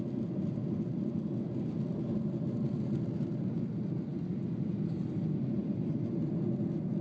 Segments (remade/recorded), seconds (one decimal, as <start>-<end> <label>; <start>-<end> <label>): 0.0-7.0 recorded